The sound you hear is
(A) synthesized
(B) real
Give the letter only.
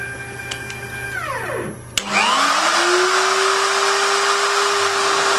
B